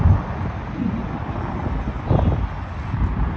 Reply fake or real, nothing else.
real